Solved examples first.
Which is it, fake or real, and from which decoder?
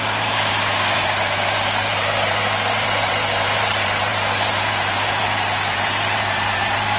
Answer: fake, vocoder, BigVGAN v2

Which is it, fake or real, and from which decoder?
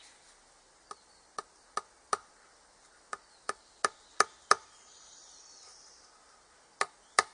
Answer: real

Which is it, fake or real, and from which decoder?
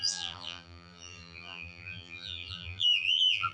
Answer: fake, vocoder, BigVGAN v2